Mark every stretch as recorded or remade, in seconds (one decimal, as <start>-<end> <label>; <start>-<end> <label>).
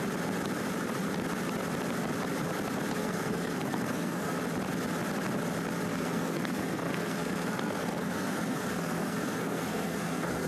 0.0-3.0 recorded; 3.0-4.4 remade; 4.4-5.9 recorded; 5.9-10.5 remade